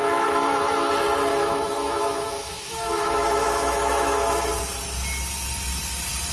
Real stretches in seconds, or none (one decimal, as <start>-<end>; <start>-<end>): 0.9-1.3; 4.5-6.3